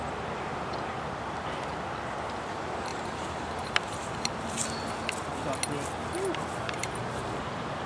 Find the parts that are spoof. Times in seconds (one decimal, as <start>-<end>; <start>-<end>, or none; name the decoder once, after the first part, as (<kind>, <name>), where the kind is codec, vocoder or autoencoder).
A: 2.9-4.5 (vocoder, BigVGAN v2); 6.8-7.9